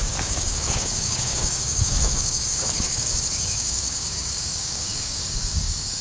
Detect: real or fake fake